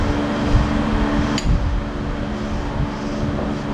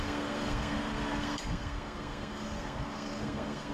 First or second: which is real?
first